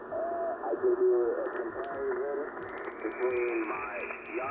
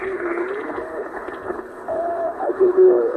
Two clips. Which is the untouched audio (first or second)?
first